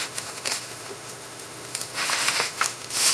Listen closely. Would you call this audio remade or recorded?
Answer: remade